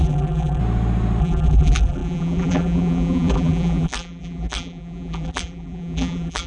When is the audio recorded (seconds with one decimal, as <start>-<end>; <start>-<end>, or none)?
0.6-1.2

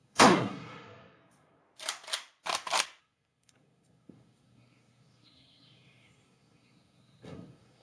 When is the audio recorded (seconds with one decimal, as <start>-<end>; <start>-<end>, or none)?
1.6-3.0

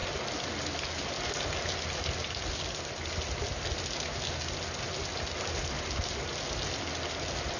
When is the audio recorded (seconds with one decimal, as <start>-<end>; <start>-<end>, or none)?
0.0-7.6